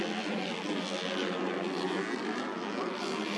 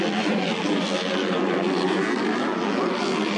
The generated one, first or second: second